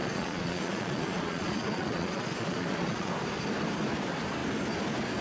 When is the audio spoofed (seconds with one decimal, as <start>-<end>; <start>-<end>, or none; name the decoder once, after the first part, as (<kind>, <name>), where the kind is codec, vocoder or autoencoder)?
0.0-3.1 (vocoder, Vocos)